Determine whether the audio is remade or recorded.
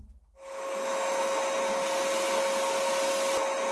recorded